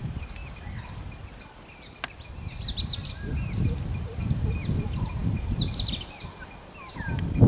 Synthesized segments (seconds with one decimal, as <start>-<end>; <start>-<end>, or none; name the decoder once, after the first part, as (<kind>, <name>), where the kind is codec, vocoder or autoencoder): none